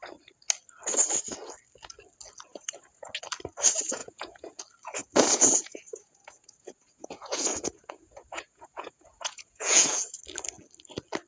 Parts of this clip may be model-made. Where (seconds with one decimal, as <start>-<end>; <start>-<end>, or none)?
2.5-3.1; 4.0-4.6; 5.0-10.2